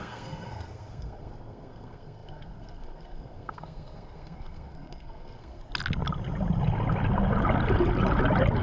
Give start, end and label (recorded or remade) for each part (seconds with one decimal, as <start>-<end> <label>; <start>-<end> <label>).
0.0-5.6 remade; 5.6-8.6 recorded